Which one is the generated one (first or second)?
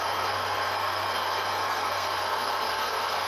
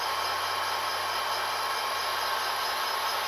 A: first